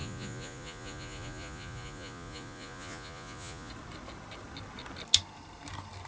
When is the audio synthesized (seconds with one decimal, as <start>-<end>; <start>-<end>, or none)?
0.0-3.7

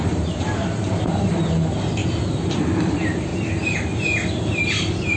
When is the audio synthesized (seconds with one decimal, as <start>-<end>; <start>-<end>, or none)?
0.0-3.3; 4.4-5.2

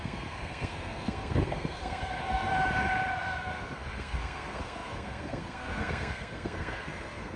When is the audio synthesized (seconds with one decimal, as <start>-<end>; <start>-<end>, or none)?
0.0-2.5; 3.1-7.4